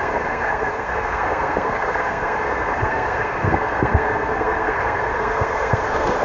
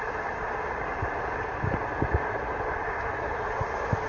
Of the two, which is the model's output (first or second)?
first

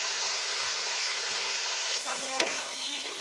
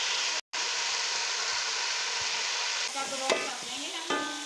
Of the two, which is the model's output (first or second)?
first